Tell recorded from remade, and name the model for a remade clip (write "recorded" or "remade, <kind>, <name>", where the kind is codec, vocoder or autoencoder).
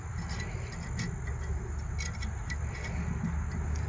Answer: recorded